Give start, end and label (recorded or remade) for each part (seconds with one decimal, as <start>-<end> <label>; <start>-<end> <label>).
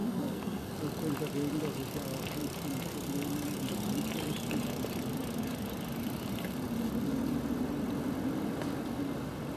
0.0-0.7 remade; 0.7-9.6 recorded